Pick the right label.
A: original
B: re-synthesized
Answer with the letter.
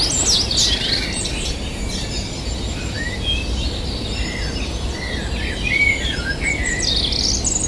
A